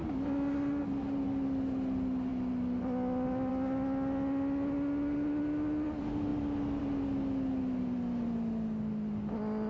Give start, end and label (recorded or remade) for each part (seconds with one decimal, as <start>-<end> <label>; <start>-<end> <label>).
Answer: 0.0-9.7 recorded